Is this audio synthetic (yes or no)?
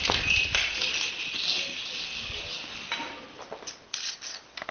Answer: no